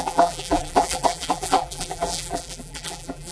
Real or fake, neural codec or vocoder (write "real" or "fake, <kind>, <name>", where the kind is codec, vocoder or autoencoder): fake, vocoder, BigVGAN v2